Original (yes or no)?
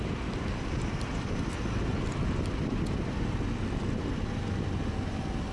yes